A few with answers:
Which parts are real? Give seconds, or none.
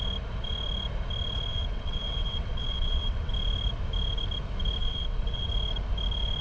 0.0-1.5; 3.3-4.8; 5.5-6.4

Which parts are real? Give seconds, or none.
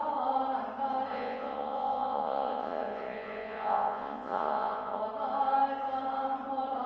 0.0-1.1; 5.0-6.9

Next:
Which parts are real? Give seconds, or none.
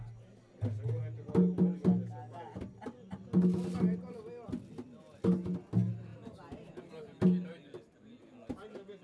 0.0-9.0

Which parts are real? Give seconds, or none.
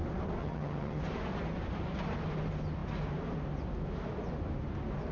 0.0-0.4; 1.0-5.1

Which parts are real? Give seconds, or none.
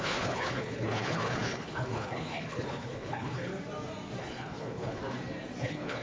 3.5-4.2; 5.0-5.6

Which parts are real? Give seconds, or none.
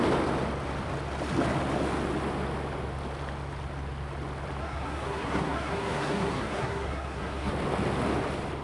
0.0-4.6; 7.5-8.6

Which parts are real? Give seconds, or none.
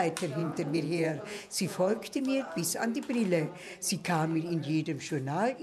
0.0-0.4; 2.2-5.6